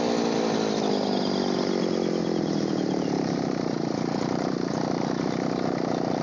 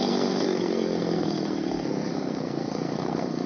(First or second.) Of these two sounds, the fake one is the second